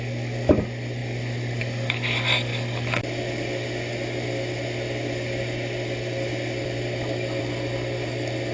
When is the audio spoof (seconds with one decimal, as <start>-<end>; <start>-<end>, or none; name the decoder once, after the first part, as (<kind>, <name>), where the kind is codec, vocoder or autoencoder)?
none